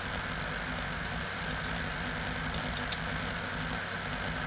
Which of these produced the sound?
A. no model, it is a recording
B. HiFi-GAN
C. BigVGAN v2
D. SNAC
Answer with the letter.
A